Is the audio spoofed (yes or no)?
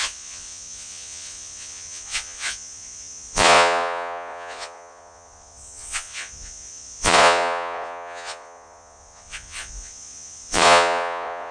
yes